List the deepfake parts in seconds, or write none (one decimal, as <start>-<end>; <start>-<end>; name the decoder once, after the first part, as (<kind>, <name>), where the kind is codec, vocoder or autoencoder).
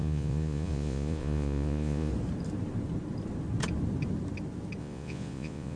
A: 0.0-2.1 (vocoder, Vocos); 4.8-5.8